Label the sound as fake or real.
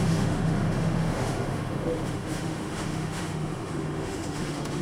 fake